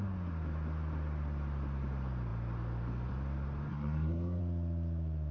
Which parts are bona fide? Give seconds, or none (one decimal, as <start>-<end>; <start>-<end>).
0.0-3.7; 4.4-5.3